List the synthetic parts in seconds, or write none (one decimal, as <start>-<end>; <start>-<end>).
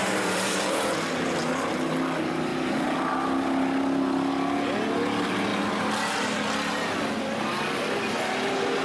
0.0-0.9